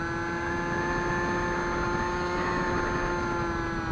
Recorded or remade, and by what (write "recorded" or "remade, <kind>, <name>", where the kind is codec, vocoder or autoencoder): recorded